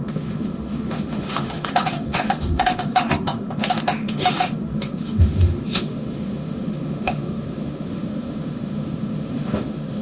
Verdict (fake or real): fake